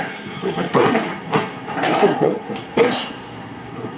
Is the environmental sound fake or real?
fake